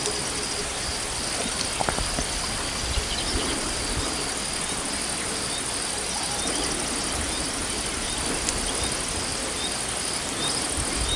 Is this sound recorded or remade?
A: recorded